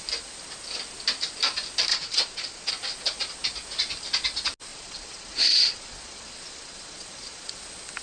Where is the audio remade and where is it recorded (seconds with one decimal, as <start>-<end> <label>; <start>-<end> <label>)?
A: 0.0-1.9 recorded; 1.9-2.7 remade; 2.7-4.7 recorded; 4.7-7.6 remade; 7.6-8.0 recorded